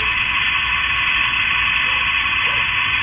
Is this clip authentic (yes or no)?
yes